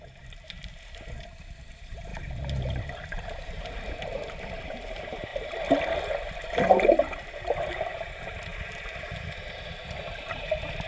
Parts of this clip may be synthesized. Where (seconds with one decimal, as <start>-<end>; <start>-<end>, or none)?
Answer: 0.0-5.3; 6.0-8.5; 9.3-10.9